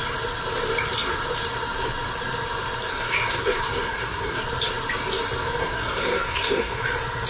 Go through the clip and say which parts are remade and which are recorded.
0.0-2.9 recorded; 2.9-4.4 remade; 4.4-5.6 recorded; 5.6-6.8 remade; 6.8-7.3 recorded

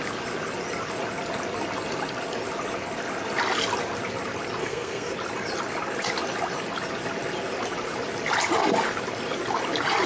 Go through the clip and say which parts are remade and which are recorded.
0.0-4.6 recorded; 4.6-5.1 remade; 5.1-10.1 recorded

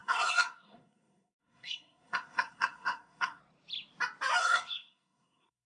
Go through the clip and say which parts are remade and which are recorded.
0.0-3.4 remade; 3.4-4.4 recorded; 4.4-5.7 remade

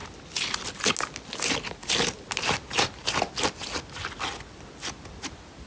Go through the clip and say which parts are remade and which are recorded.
0.0-5.7 recorded

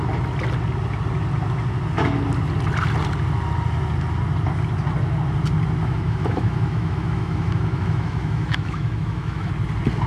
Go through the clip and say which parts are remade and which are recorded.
0.0-5.8 recorded; 5.8-9.5 remade; 9.5-10.1 recorded

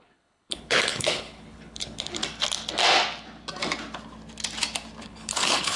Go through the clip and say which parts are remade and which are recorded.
0.0-2.2 remade; 2.2-5.0 recorded; 5.0-5.8 remade